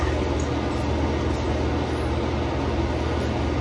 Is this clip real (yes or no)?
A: yes